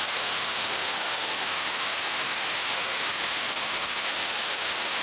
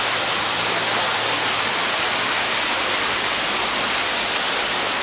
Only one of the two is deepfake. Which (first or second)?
first